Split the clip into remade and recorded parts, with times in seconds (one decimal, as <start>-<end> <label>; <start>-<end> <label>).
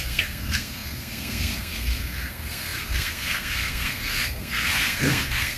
0.0-5.6 remade